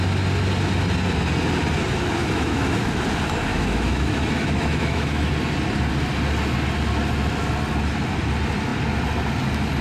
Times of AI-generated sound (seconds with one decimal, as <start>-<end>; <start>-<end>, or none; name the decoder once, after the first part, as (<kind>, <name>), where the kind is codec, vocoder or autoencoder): 2.2-2.9 (autoencoder, DAC-VAE); 3.5-5.3